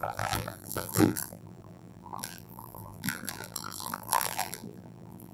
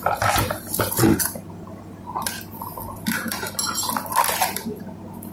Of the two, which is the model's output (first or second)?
first